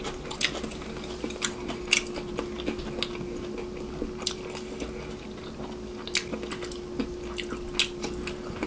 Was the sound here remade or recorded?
recorded